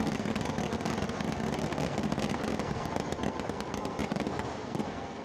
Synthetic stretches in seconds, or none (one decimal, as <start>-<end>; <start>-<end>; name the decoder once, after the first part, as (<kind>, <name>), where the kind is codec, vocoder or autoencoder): 0.0-5.2 (codec, SNAC)